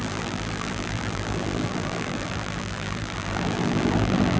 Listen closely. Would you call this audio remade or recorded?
remade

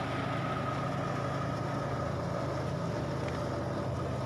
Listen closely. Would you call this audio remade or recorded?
recorded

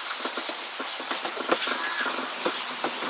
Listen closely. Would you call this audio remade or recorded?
recorded